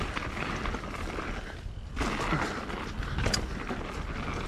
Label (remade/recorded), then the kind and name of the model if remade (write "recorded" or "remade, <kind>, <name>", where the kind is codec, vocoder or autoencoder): recorded